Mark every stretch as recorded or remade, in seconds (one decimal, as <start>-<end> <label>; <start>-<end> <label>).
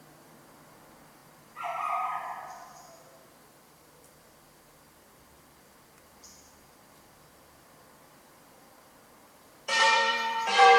0.0-10.8 remade